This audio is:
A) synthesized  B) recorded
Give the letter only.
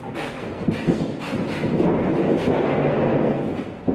A